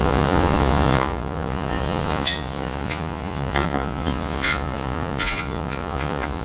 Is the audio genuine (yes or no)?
no